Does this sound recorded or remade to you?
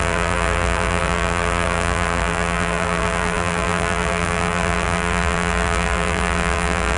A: remade